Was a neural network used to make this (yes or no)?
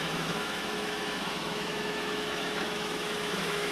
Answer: yes